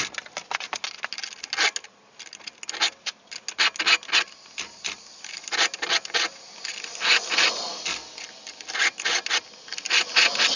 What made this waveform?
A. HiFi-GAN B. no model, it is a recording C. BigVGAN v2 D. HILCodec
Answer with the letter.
B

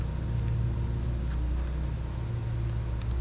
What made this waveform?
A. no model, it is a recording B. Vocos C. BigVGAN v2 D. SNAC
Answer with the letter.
A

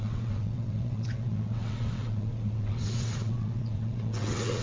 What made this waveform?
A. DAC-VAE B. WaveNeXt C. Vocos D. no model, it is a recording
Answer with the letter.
B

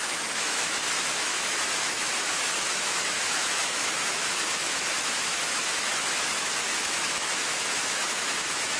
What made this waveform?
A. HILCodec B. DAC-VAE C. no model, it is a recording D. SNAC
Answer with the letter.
B